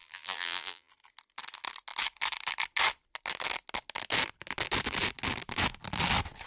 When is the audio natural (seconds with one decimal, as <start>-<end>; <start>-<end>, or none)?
0.9-6.5